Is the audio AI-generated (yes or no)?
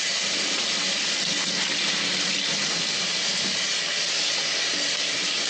no